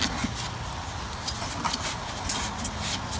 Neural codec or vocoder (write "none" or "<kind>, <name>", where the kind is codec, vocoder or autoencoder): none